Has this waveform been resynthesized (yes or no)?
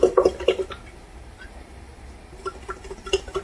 no